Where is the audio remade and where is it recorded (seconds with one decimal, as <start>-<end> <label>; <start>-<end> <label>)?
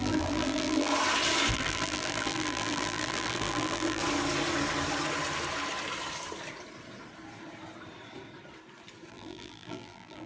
0.0-0.9 remade; 0.9-1.5 recorded; 1.5-4.0 remade; 4.0-9.1 recorded; 9.1-10.3 remade